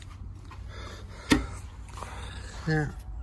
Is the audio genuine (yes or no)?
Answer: yes